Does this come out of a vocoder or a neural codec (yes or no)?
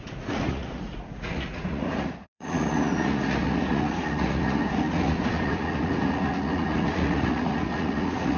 yes